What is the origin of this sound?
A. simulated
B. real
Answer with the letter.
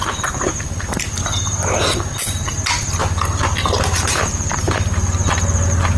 B